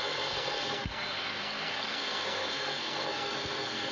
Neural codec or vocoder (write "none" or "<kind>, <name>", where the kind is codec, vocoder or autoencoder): codec, SNAC